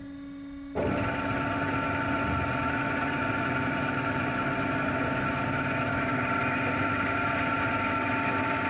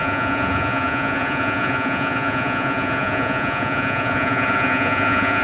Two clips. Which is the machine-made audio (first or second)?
second